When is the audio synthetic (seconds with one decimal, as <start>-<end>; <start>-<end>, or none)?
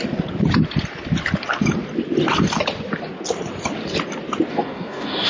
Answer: 4.5-5.3